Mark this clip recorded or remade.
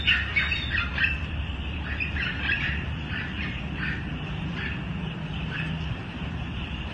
remade